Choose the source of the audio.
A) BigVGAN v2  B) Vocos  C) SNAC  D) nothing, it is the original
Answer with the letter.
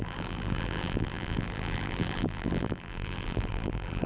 A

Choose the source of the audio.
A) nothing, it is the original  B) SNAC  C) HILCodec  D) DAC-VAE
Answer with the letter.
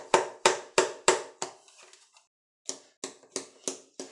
A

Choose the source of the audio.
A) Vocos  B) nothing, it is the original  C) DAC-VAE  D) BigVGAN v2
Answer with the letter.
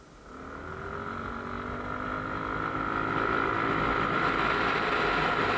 B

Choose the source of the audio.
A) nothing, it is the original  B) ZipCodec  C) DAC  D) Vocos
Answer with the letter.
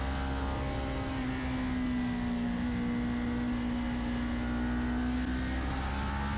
A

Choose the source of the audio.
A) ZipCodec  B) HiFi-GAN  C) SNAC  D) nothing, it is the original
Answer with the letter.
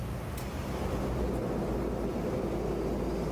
D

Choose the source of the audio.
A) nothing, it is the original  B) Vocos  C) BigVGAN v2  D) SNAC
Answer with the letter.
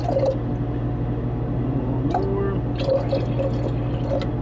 A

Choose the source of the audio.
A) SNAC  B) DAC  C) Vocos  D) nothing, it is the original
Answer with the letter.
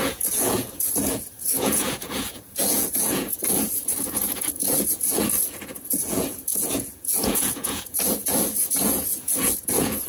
C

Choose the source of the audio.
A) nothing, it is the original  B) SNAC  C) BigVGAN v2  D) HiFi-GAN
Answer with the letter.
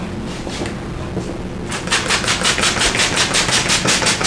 A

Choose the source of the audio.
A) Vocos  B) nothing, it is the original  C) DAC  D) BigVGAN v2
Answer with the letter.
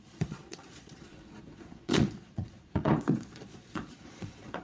A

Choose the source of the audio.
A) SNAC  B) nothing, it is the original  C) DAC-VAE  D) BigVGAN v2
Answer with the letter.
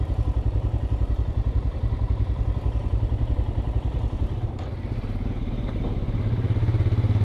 D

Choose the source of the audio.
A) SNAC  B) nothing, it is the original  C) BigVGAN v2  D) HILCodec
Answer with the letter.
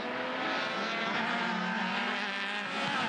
B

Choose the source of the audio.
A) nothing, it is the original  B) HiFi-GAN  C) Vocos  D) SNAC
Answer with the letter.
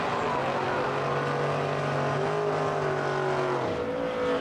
A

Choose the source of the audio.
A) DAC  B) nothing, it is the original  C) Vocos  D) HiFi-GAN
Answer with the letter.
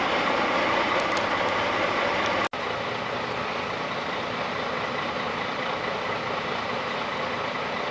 B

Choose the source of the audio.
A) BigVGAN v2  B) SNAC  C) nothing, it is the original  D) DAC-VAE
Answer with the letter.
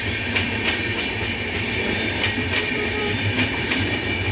A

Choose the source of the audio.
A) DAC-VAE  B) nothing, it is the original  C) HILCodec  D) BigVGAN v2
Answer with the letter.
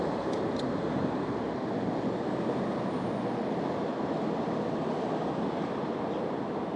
B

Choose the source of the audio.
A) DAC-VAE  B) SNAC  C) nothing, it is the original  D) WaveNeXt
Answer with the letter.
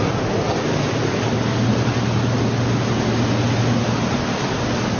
C